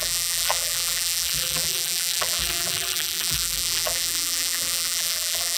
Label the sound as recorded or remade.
remade